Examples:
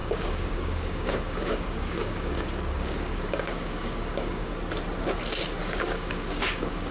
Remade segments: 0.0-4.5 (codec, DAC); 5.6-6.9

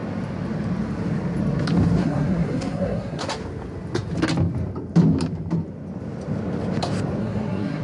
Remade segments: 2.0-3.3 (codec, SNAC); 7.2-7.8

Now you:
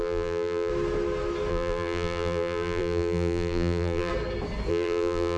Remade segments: 0.0-0.7 (vocoder, BigVGAN v2); 1.5-4.1; 4.7-5.4

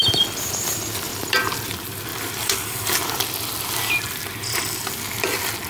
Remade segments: 1.1-1.7 (vocoder, BigVGAN v2); 2.1-3.5